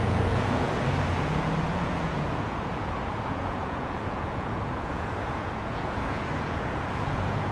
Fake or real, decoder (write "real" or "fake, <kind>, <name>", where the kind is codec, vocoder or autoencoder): fake, vocoder, Vocos